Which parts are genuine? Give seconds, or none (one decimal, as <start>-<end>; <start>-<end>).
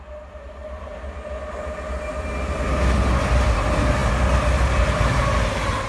0.0-5.9